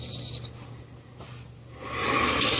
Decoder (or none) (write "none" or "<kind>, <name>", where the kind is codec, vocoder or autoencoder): none